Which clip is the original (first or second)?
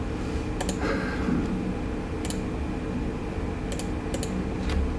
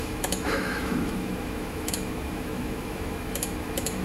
first